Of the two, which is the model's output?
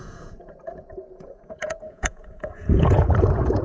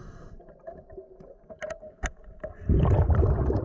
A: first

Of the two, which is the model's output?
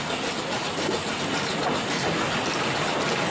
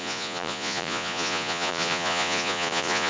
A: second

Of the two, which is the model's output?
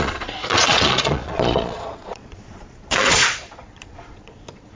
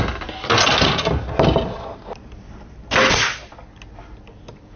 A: first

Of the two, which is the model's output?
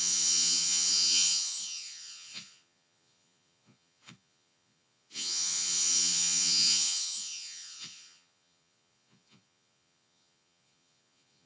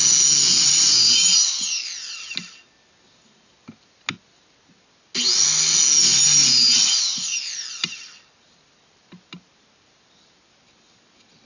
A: first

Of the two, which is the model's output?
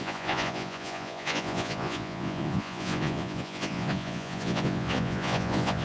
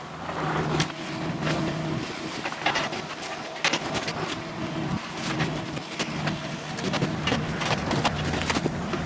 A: first